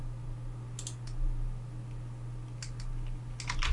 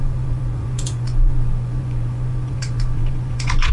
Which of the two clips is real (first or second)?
first